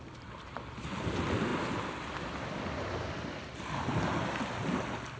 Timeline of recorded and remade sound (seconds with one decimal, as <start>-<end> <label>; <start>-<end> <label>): 0.0-5.2 recorded